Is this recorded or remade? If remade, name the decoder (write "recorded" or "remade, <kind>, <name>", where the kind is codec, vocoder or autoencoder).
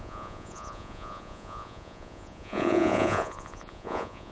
remade, vocoder, Vocos